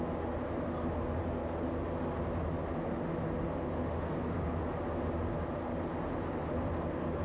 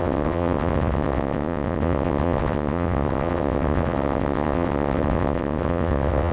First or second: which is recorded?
first